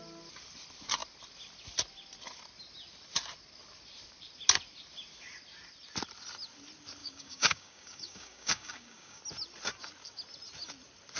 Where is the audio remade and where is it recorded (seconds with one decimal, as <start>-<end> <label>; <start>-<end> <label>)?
0.0-7.0 recorded; 7.0-9.2 remade; 9.2-11.2 recorded